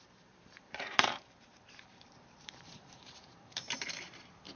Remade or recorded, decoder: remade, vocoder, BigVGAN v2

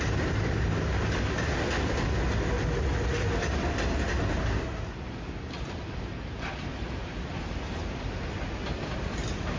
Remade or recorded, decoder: recorded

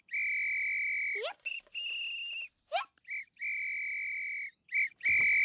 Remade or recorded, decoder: recorded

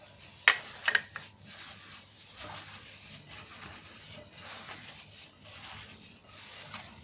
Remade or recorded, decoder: recorded